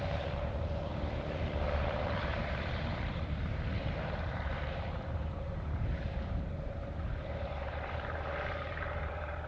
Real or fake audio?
fake